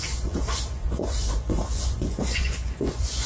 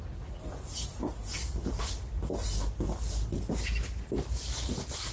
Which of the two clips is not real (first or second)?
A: first